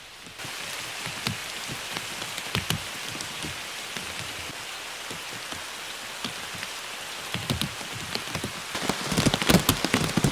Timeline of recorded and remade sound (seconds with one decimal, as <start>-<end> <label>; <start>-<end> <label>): 0.0-1.4 recorded; 1.4-2.4 remade; 2.4-10.3 recorded